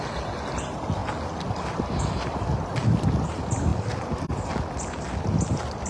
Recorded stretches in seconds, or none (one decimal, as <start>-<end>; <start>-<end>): 0.0-5.9